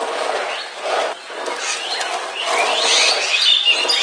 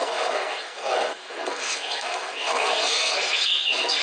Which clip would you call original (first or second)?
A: first